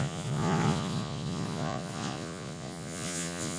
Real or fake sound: fake